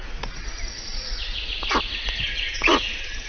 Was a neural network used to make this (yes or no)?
yes